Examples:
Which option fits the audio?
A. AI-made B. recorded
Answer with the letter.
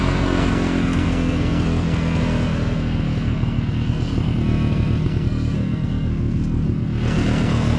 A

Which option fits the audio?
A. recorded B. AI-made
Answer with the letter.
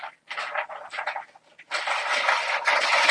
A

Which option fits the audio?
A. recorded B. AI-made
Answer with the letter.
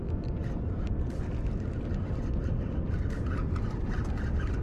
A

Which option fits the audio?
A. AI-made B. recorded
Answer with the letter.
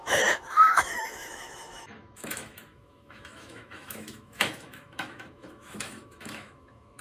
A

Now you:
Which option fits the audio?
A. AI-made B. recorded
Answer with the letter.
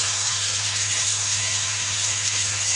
A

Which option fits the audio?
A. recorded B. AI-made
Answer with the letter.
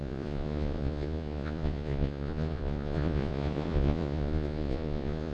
B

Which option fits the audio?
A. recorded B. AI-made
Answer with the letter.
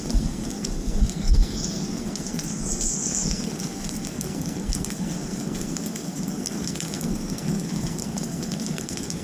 B